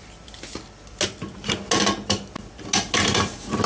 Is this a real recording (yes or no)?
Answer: yes